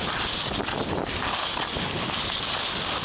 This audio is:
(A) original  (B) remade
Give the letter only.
A